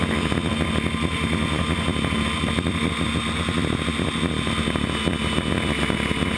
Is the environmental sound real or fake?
real